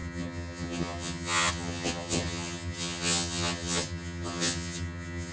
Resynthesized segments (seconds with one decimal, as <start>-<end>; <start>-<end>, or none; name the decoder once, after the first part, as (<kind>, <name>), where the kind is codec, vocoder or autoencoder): 0.0-5.3 (vocoder, HiFi-GAN)